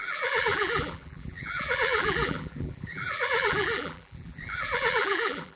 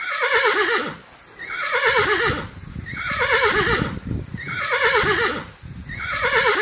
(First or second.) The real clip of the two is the second